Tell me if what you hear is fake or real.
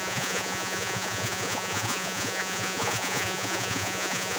fake